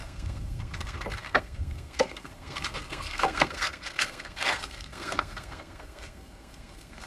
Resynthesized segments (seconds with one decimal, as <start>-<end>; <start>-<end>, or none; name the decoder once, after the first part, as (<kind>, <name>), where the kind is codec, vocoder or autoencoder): 0.0-7.1 (codec, SNAC)